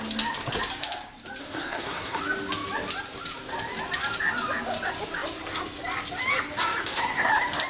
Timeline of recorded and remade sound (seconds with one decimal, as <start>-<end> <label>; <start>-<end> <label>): 0.0-1.4 recorded; 1.4-2.2 remade; 2.2-6.8 recorded; 6.8-7.3 remade; 7.3-7.7 recorded